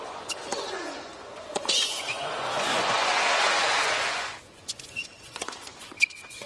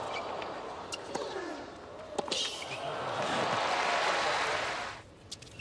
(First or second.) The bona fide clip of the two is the second